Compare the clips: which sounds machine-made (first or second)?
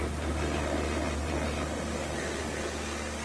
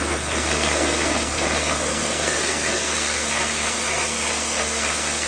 second